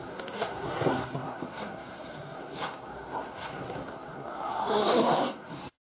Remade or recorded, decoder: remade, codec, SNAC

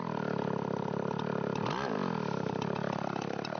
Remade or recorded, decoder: recorded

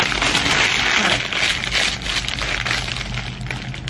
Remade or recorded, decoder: recorded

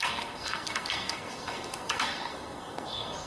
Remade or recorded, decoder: remade, codec, SNAC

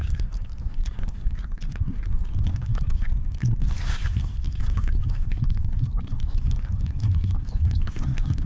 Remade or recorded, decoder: remade, codec, SNAC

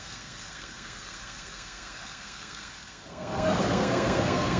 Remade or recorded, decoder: remade, codec, SNAC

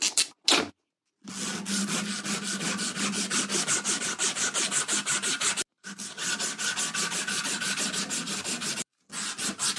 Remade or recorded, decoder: recorded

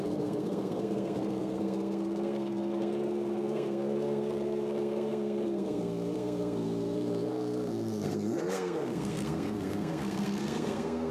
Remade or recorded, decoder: remade, codec, SNAC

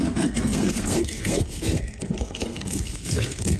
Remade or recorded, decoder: remade, codec, SNAC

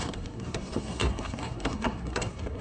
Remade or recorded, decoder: remade, codec, SNAC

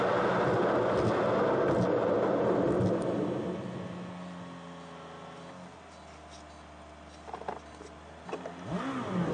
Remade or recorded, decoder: recorded